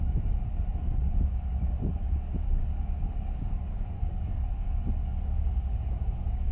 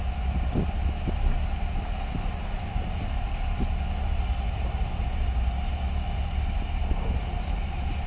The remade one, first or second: first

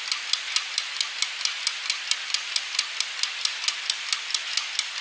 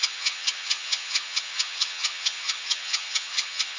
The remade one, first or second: second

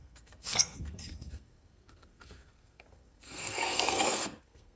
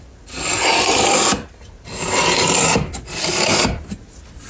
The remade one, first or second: first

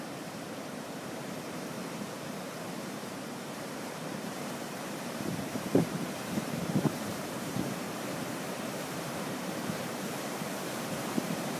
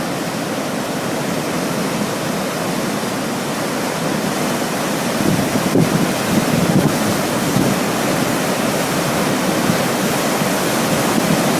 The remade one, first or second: first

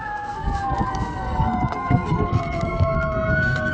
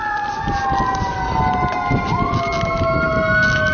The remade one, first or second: first